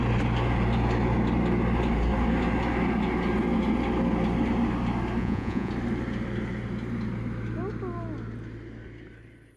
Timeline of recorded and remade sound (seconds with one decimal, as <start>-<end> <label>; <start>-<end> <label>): 0.0-5.2 recorded; 5.2-5.7 remade; 5.7-9.6 recorded

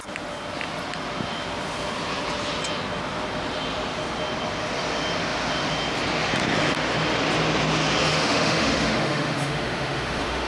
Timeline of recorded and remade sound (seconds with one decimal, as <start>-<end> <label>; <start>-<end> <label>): 0.0-8.1 recorded; 8.1-10.5 remade